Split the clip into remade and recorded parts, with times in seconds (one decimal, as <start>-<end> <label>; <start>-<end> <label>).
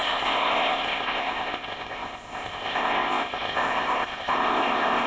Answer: 0.0-5.1 remade